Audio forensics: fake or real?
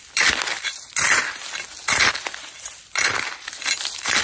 real